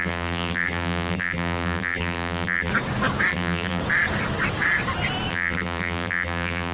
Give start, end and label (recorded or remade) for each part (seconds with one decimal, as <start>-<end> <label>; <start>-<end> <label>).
0.0-2.7 remade; 2.7-3.3 recorded; 3.3-3.8 remade; 3.8-5.3 recorded; 5.3-6.7 remade